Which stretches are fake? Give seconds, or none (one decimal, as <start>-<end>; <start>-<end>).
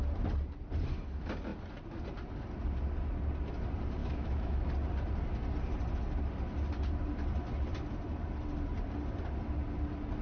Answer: 4.0-4.7